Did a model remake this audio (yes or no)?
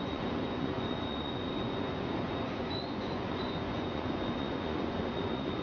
yes